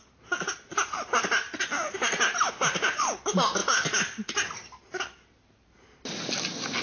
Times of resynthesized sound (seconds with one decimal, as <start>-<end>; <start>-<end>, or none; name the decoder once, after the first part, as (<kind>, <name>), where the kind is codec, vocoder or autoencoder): none